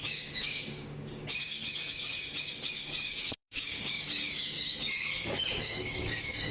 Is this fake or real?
fake